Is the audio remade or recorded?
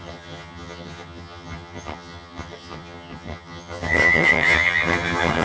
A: remade